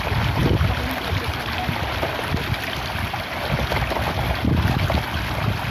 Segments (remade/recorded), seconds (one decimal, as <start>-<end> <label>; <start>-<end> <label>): 0.0-5.7 recorded